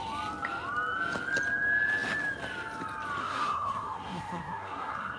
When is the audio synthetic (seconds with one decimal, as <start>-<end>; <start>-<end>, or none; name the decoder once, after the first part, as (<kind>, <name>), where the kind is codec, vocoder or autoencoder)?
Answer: 3.2-5.2 (codec, SNAC)